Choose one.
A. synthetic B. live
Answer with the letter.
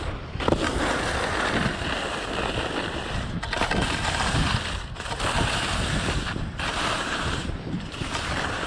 B